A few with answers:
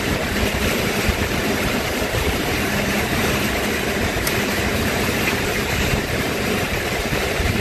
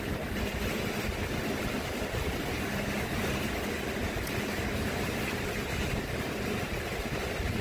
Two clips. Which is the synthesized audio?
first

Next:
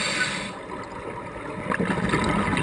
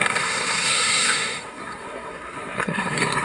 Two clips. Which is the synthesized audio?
second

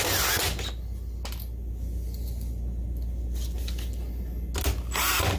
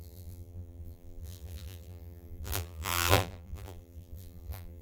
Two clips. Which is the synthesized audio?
second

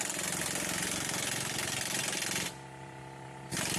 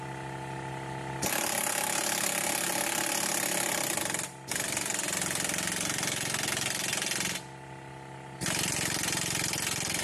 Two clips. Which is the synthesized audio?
first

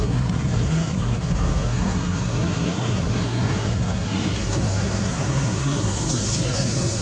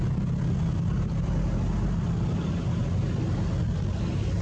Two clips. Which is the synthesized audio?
first